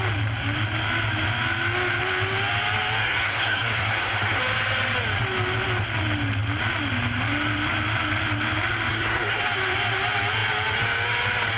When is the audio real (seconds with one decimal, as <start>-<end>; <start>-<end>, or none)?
0.0-3.0; 4.4-8.9; 9.4-11.6